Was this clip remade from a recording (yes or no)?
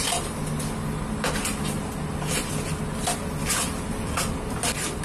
no